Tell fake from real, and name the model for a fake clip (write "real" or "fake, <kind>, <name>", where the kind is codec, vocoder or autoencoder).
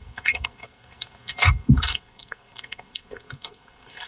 fake, codec, SNAC